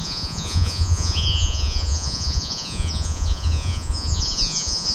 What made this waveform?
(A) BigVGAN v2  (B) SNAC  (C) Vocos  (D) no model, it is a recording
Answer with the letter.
C